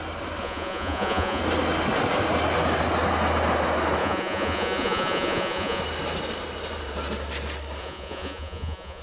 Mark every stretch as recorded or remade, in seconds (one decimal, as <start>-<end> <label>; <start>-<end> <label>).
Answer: 0.0-0.4 recorded; 0.4-1.4 remade; 1.4-4.0 recorded; 4.0-5.8 remade; 5.8-7.8 recorded; 7.8-9.0 remade